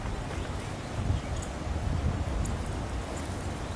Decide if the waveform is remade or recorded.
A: recorded